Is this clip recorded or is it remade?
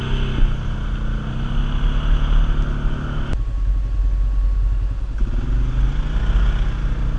recorded